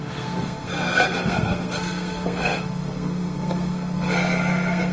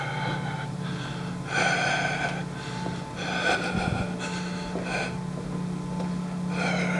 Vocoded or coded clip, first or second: first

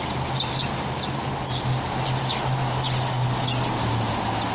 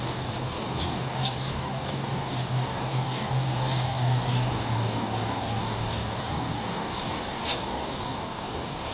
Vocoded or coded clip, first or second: second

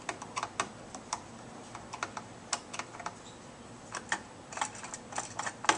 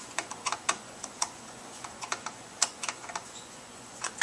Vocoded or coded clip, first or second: second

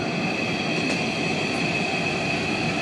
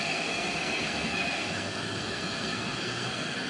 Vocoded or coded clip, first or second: second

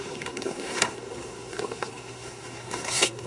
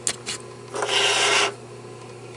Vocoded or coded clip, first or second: first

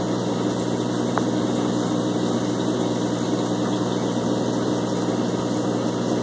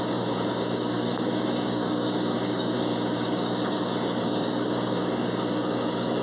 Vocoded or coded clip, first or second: second